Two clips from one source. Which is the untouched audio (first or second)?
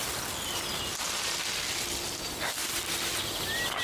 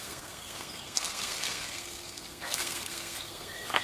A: first